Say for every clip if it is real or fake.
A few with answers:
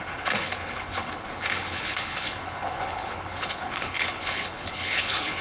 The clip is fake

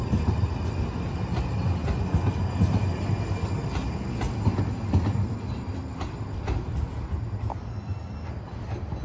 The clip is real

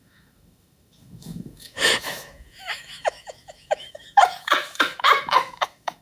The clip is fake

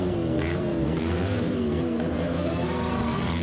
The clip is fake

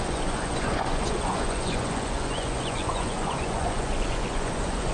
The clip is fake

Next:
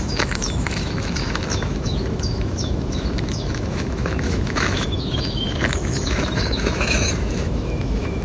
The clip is fake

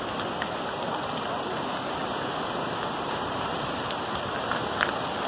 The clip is real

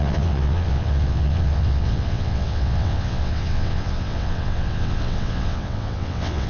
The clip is fake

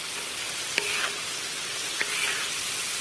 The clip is real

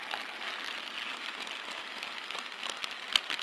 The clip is real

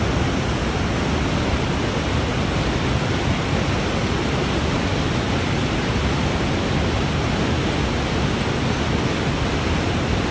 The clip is real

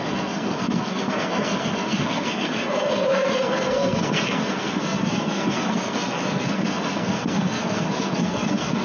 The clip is fake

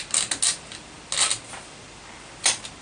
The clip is real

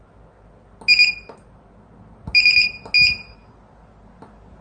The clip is real